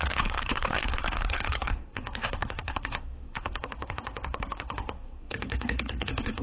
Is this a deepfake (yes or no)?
yes